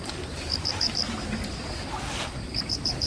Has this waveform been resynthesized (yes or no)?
yes